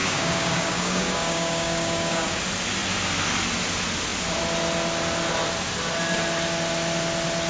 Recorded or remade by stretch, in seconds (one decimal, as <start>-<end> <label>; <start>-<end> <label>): 0.0-2.4 remade; 2.4-7.5 recorded